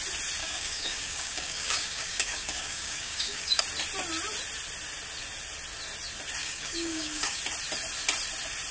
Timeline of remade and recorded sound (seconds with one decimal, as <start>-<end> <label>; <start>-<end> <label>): 0.0-0.4 recorded; 0.4-3.6 remade; 3.6-6.4 recorded; 6.4-7.4 remade; 7.4-8.7 recorded